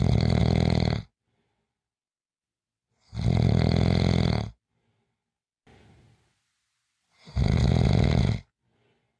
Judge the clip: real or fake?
real